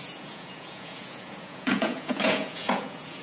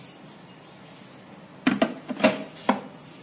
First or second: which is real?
second